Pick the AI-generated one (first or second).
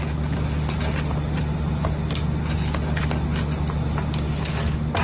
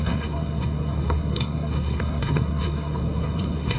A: second